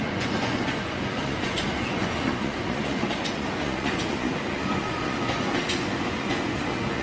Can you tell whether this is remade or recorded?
remade